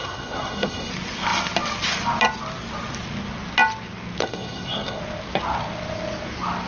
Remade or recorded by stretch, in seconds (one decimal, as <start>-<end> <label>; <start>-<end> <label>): 0.0-0.9 remade; 0.9-4.2 recorded; 4.2-5.0 remade; 5.0-6.7 recorded